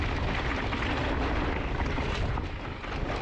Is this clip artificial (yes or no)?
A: no